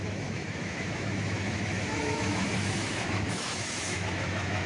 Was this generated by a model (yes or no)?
yes